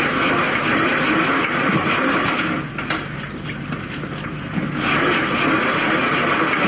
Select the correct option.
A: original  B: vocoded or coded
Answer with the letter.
A